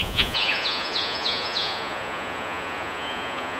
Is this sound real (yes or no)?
no